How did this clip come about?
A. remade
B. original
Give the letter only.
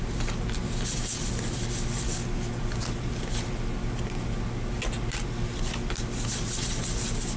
B